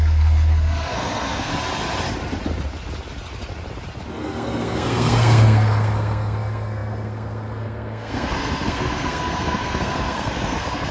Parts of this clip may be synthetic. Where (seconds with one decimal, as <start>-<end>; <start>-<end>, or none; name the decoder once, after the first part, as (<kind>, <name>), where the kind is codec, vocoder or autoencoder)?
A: 0.0-1.5 (codec, SNAC); 4.1-10.9